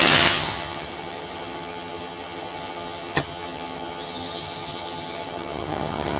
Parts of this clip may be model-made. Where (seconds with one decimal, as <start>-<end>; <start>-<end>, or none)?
0.0-6.2